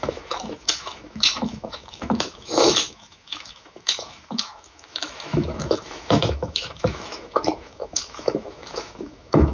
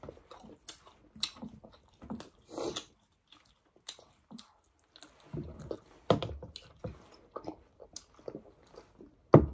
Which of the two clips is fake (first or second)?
first